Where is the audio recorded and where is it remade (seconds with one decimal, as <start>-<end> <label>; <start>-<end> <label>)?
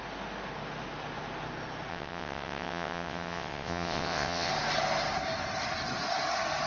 0.0-1.9 recorded; 1.9-4.5 remade; 4.5-6.7 recorded